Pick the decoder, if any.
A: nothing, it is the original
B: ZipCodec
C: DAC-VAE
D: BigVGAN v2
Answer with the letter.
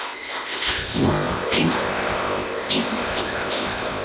B